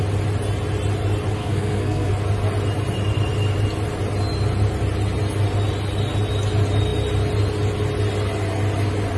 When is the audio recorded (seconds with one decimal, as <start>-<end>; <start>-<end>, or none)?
0.0-1.4; 2.1-9.2